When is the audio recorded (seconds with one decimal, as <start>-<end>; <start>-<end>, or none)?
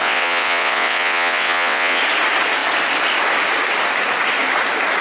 2.0-5.0